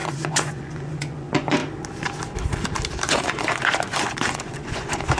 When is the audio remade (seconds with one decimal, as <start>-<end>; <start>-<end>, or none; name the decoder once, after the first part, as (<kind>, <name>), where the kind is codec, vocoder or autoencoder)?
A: 0.0-1.6 (vocoder, Vocos); 3.1-5.2